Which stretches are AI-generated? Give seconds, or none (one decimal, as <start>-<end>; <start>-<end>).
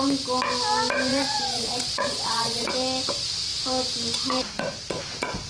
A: 1.1-2.7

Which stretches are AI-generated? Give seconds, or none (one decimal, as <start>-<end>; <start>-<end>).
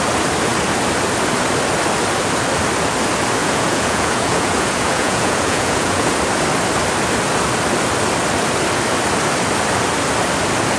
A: 3.4-6.1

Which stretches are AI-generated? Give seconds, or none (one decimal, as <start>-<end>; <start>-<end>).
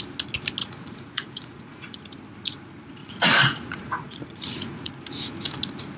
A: 0.6-2.0; 3.0-4.9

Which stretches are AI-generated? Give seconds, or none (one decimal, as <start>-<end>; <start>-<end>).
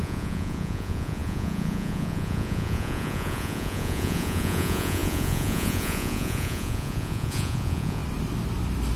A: 0.0-8.0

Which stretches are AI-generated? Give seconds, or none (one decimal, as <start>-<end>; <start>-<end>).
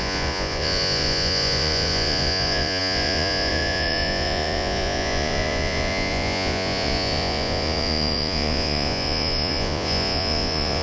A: 0.0-10.8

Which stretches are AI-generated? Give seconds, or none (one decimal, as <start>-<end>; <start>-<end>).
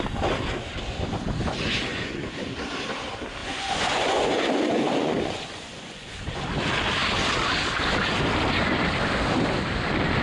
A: 1.9-2.5; 3.4-6.4